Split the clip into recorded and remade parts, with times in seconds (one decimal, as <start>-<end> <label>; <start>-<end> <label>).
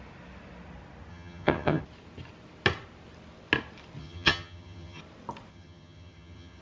0.0-1.1 recorded; 1.1-1.8 remade; 1.8-4.0 recorded; 4.0-5.0 remade; 5.0-5.5 recorded; 5.5-6.6 remade